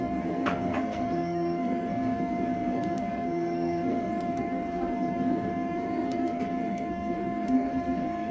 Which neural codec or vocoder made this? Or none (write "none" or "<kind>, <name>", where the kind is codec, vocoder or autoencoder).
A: codec, SNAC